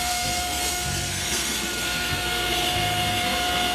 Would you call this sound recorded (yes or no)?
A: no